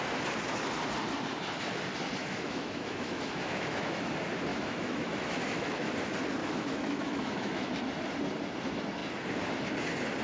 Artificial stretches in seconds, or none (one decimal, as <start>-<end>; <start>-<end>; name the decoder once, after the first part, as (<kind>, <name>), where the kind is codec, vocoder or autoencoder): 2.2-4.1 (autoencoder, DAC-VAE); 4.5-5.9; 6.4-7.8